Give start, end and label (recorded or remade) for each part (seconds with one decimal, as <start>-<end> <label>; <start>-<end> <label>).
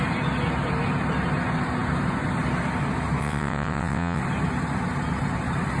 0.0-3.2 recorded; 3.2-4.2 remade; 4.2-5.8 recorded